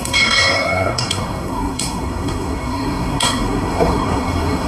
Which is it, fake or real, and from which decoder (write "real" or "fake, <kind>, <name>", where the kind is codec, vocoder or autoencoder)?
fake, codec, SNAC